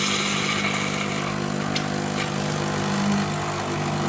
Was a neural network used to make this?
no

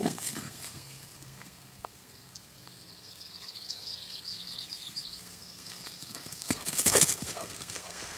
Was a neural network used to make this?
yes